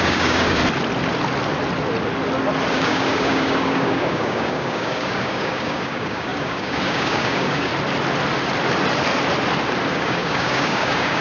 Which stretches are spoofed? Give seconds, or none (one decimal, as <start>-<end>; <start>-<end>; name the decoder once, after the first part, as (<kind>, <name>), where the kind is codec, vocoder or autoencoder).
0.0-0.6 (codec, DAC); 2.7-7.7; 9.9-11.2